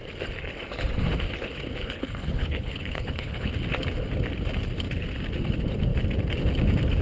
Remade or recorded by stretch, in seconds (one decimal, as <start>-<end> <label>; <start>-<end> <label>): 0.0-1.8 recorded; 1.8-3.5 remade; 3.5-7.0 recorded